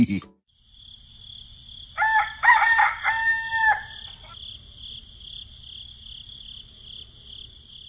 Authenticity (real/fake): real